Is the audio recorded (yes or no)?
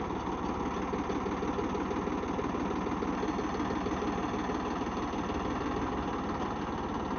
yes